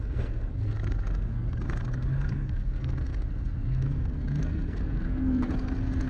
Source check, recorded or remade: remade